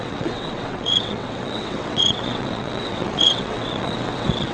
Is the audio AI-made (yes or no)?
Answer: yes